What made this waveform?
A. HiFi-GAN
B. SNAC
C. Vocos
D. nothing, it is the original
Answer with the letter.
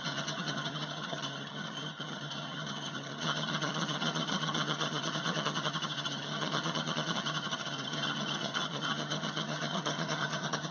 A